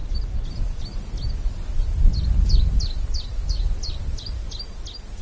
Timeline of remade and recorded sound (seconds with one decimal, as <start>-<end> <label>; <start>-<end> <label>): 0.0-5.2 recorded